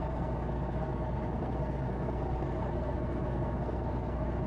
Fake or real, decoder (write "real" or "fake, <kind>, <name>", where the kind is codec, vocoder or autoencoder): fake, codec, SNAC